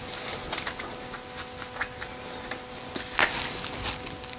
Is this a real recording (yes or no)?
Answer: yes